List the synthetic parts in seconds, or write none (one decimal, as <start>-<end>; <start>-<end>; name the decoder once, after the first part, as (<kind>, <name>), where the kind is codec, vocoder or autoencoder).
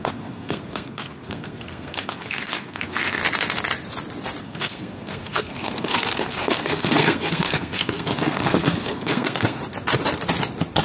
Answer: 0.0-3.2 (codec, SNAC); 4.4-9.6